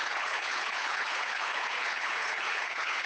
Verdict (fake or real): fake